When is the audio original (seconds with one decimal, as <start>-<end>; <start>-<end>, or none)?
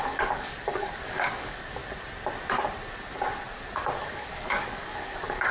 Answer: 1.8-4.0